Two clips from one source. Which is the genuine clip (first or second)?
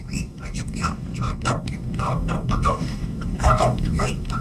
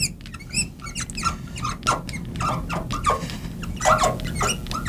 second